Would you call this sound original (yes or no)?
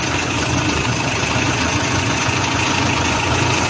no